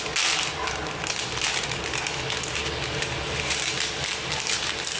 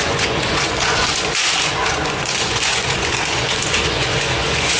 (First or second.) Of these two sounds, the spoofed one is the second